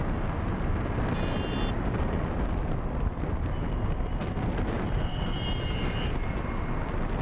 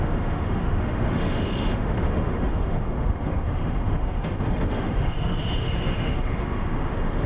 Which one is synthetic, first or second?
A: second